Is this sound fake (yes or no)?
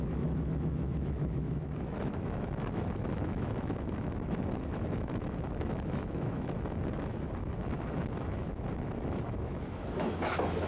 yes